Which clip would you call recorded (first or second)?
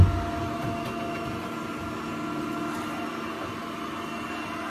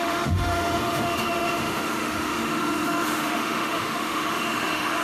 first